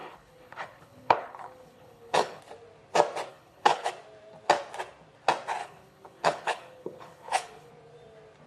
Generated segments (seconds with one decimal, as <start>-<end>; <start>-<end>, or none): 0.0-2.4; 3.3-3.9; 5.6-7.7